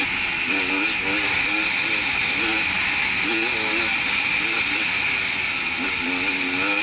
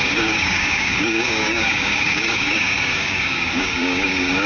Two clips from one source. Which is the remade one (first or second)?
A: second